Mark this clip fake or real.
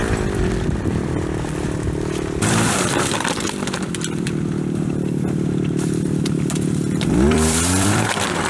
fake